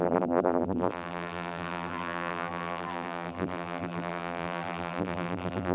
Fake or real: fake